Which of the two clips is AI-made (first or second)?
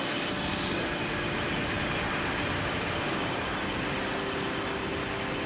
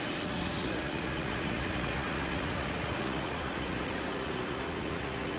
second